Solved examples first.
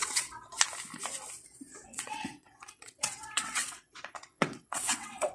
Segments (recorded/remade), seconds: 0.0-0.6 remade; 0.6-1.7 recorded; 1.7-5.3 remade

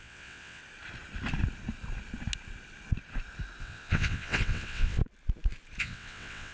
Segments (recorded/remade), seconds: 0.0-0.6 remade; 0.6-3.6 recorded; 3.6-5.0 remade; 5.0-5.8 recorded; 5.8-6.5 remade

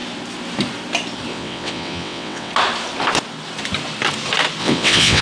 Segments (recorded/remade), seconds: 0.0-1.3 recorded; 1.3-2.5 remade; 2.5-4.6 recorded; 4.6-5.2 remade

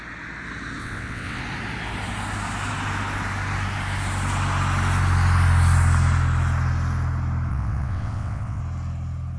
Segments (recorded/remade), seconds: 0.0-0.8 recorded; 0.8-1.4 remade; 1.4-7.5 recorded; 7.5-8.6 remade; 8.6-9.4 recorded

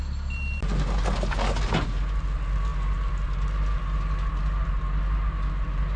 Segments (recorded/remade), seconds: 0.0-6.0 recorded

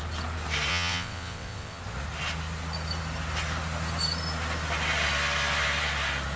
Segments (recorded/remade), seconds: 0.0-0.7 recorded; 0.7-1.8 remade; 1.8-6.4 recorded

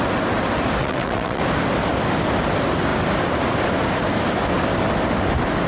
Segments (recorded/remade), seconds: 0.0-0.8 recorded; 0.8-1.4 remade; 1.4-5.7 recorded

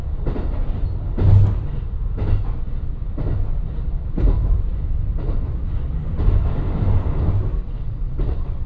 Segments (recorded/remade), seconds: 0.0-7.6 recorded; 7.6-8.7 remade